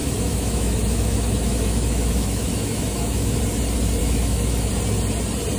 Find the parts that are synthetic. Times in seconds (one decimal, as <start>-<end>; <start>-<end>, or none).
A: 0.0-3.4; 4.0-4.7